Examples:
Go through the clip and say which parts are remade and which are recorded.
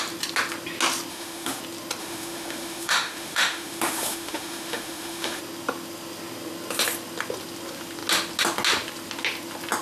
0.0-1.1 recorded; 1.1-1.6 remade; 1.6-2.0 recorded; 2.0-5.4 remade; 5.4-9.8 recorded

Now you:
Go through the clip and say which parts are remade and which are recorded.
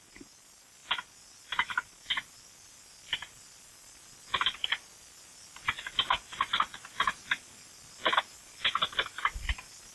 0.0-9.9 recorded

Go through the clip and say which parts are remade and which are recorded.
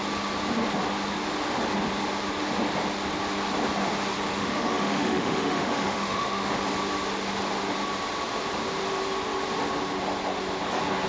0.0-4.3 recorded; 4.3-6.5 remade; 6.5-11.1 recorded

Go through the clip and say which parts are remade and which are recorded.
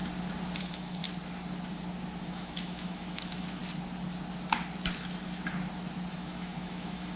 0.0-0.6 recorded; 0.6-1.0 remade; 1.0-2.2 recorded; 2.2-3.6 remade; 3.6-6.1 recorded; 6.1-7.2 remade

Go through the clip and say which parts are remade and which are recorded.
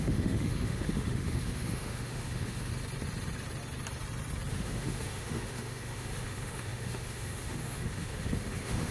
0.0-2.7 remade; 2.7-4.5 recorded; 4.5-8.9 remade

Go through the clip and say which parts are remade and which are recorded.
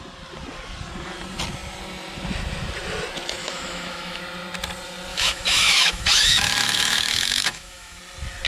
0.0-3.4 recorded; 3.4-4.2 remade; 4.2-5.1 recorded; 5.1-8.0 remade; 8.0-8.5 recorded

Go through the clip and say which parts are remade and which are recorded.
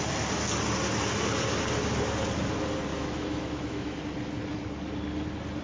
0.0-2.9 recorded; 2.9-4.0 remade; 4.0-5.6 recorded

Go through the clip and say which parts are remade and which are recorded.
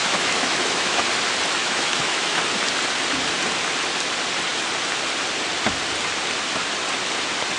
0.0-1.0 remade; 1.0-1.6 recorded; 1.6-2.4 remade; 2.4-7.6 recorded